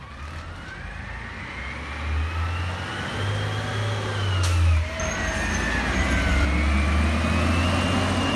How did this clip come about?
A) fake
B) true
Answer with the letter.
B